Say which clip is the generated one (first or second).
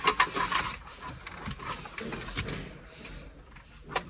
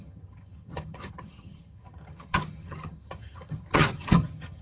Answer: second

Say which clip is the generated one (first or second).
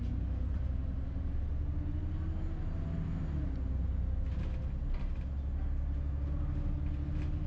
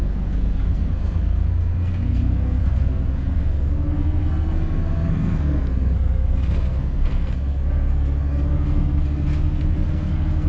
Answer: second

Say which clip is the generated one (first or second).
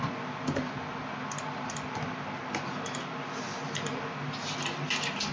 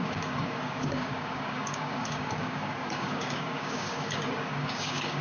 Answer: second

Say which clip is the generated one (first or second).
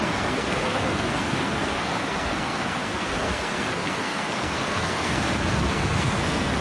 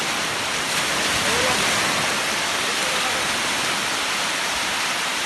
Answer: first